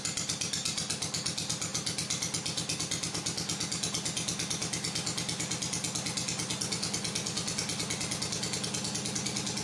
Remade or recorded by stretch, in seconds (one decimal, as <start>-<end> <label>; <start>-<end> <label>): 0.0-9.6 recorded